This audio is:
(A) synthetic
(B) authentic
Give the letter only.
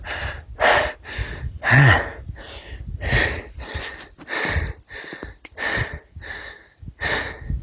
B